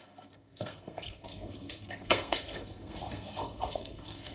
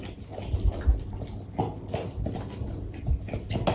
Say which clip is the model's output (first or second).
first